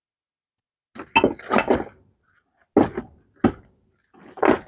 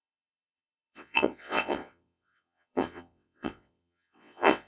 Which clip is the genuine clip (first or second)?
first